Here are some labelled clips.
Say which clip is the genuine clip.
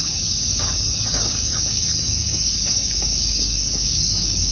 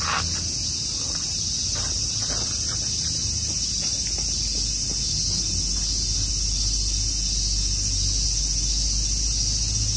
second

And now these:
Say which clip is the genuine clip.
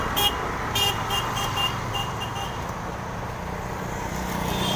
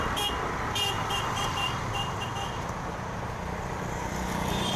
first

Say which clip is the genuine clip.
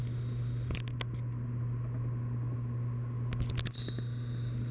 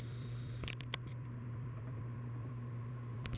first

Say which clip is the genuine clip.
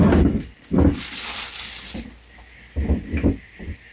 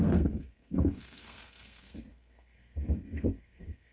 first